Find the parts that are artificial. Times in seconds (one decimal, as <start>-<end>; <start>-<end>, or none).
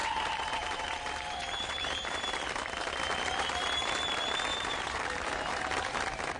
0.0-2.2; 4.5-5.6